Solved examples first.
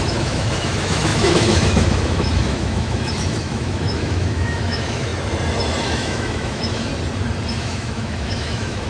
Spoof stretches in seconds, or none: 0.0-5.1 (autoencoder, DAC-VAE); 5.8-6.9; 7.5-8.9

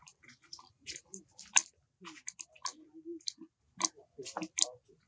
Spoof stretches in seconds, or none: 0.0-1.0 (vocoder, BigVGAN v2)